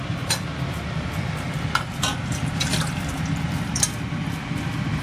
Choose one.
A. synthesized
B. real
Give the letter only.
B